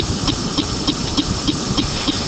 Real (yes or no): no